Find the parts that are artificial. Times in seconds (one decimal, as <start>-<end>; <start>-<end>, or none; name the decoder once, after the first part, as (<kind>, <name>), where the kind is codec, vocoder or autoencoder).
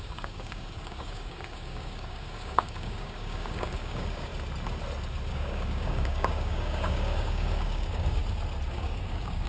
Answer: 0.0-4.3 (codec, DAC); 5.3-8.2; 8.7-9.5